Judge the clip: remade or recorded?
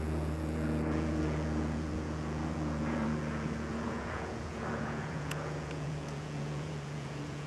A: remade